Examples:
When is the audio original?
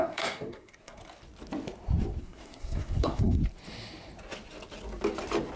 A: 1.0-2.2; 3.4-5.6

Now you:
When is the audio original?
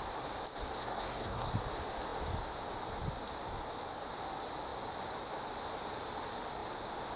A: 0.0-0.8; 1.5-7.2